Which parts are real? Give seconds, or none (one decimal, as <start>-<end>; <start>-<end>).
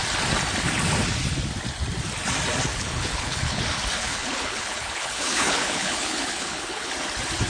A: 0.0-2.7; 3.6-4.0; 6.9-7.5